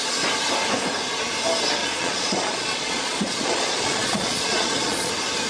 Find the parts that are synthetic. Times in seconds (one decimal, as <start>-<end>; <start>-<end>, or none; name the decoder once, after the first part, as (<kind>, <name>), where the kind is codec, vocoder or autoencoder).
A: 1.8-5.1 (vocoder, Vocos)